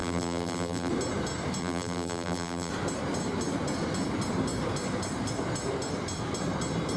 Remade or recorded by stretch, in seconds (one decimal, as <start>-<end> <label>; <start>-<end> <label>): 0.0-0.9 remade; 0.9-1.6 recorded; 1.6-2.7 remade; 2.7-7.0 recorded